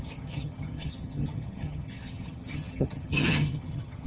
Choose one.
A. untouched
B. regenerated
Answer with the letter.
B